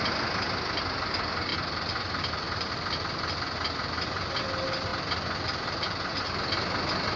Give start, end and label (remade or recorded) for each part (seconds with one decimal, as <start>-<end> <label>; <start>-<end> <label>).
0.0-7.2 recorded